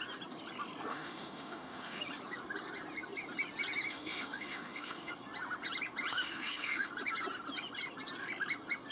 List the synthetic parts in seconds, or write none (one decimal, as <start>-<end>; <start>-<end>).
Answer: 0.9-2.0; 3.9-5.1; 6.1-6.9